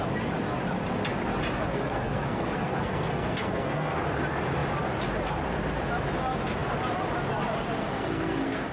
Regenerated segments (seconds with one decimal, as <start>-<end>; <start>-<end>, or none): 1.7-4.0; 7.8-8.7